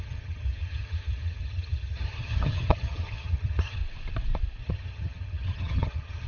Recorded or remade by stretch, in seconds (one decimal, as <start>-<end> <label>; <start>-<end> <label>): 0.0-3.8 remade; 3.8-4.6 recorded; 4.6-6.3 remade